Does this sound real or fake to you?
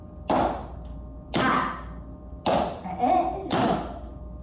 real